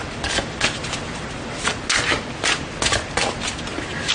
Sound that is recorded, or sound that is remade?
recorded